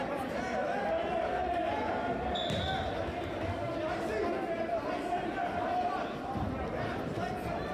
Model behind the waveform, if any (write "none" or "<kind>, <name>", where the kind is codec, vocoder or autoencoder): none